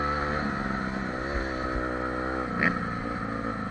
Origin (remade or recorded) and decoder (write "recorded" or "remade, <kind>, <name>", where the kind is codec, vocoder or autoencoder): recorded